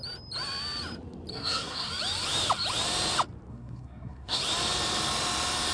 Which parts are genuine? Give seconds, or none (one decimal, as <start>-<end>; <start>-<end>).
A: 0.0-1.3; 1.9-3.5; 4.4-5.7